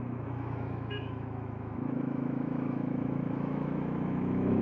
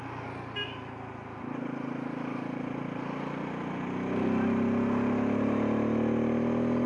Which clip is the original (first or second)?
second